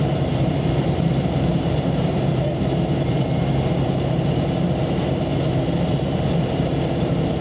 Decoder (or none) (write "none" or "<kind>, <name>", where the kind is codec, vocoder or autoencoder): vocoder, BigVGAN v2